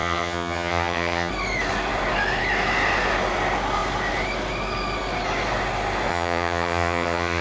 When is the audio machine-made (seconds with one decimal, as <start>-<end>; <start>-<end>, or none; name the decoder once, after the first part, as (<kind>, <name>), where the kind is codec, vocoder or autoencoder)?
0.0-1.3 (vocoder, HiFi-GAN); 6.1-7.4

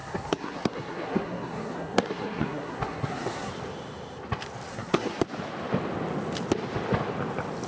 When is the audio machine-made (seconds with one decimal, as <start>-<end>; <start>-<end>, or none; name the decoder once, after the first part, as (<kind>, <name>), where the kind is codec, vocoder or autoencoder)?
0.0-3.5 (codec, SNAC); 4.7-5.2

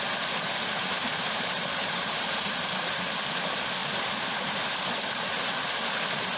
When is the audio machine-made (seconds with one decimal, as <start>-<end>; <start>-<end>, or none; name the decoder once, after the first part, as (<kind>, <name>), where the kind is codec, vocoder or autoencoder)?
0.6-2.5 (vocoder, BigVGAN v2); 3.8-6.4